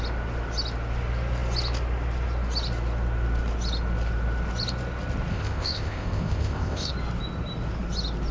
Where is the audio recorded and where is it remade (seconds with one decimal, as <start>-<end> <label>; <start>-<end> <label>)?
0.0-5.3 recorded; 5.3-6.9 remade; 6.9-8.3 recorded